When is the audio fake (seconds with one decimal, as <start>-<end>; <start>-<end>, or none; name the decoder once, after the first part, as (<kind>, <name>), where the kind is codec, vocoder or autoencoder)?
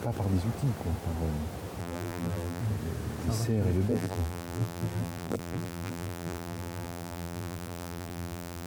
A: 1.8-2.6 (vocoder, BigVGAN v2); 3.9-8.7